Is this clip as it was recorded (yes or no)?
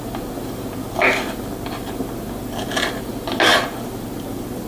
yes